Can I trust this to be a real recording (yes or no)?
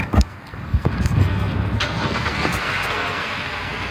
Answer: no